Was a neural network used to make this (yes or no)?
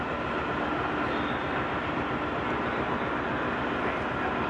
no